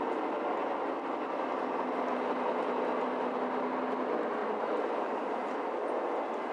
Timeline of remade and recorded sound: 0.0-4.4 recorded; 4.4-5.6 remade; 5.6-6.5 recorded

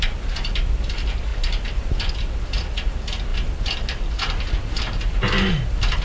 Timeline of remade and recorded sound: 0.0-6.0 recorded